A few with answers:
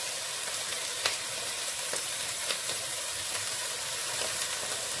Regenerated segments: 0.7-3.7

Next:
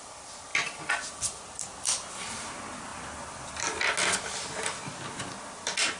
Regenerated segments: 0.5-2.2; 2.9-3.8